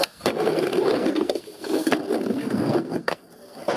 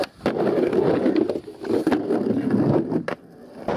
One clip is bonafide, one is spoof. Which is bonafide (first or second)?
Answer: second